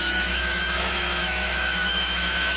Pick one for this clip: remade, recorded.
remade